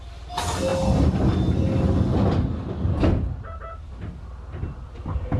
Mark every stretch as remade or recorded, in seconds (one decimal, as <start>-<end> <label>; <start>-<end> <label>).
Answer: 0.0-5.4 recorded